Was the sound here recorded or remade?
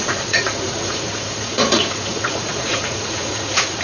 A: remade